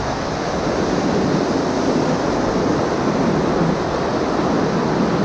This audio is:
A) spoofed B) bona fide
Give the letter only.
B